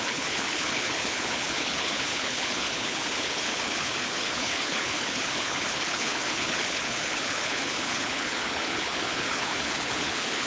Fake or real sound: fake